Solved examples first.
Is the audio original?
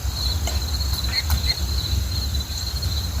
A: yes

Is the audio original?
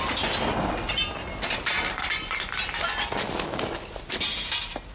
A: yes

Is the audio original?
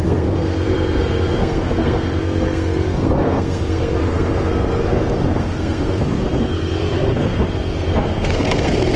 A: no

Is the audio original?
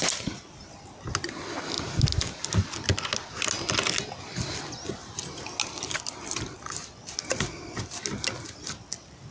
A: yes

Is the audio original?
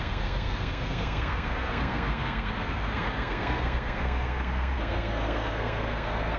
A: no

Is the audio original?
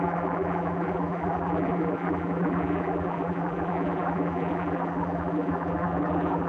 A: no